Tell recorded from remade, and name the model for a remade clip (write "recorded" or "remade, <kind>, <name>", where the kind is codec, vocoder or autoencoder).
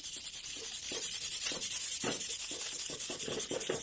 recorded